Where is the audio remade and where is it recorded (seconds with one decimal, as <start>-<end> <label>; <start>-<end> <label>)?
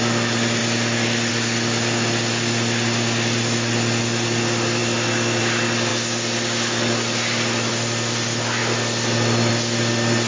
0.0-10.3 recorded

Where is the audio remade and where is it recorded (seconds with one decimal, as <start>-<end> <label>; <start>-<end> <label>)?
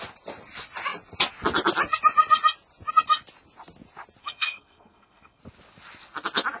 0.0-4.2 recorded; 4.2-5.4 remade; 5.4-6.6 recorded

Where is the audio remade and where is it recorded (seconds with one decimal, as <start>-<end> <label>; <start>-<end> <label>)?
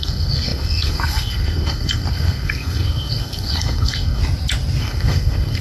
0.0-4.2 remade; 4.2-4.8 recorded; 4.8-5.6 remade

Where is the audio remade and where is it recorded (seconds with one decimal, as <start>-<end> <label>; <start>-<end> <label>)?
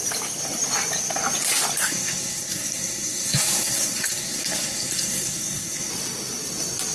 0.0-1.8 recorded; 1.8-5.9 remade; 5.9-6.9 recorded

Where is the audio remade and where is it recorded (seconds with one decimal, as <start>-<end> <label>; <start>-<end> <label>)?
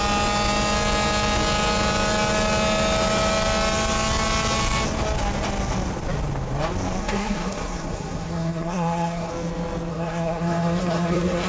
0.0-7.0 recorded; 7.0-9.3 remade; 9.3-9.9 recorded; 9.9-11.5 remade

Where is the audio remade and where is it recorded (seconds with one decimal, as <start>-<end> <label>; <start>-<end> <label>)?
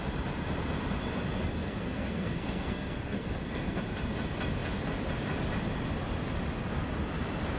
0.0-1.6 recorded; 1.6-3.8 remade; 3.8-7.6 recorded